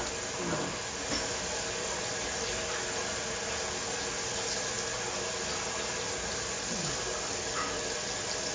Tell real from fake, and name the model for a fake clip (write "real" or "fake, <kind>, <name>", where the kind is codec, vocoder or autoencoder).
real